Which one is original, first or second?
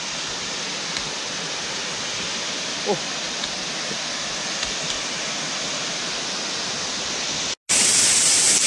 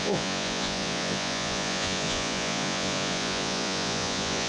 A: first